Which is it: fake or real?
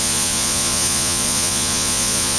fake